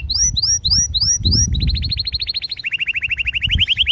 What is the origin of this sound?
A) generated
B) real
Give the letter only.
B